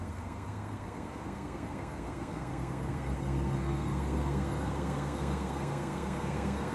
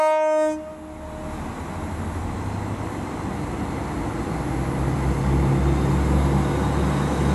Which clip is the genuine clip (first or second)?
second